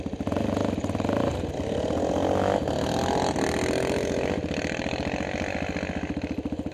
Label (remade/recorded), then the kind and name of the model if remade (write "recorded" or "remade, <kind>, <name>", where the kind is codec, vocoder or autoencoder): recorded